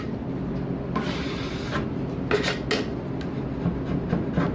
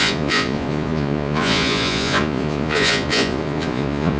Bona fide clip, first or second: first